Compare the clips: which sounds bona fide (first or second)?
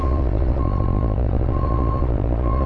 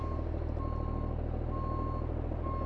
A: second